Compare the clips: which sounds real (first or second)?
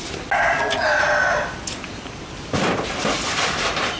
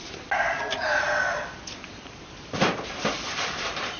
first